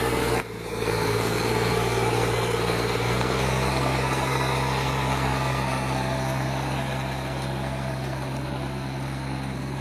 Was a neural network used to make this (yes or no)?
yes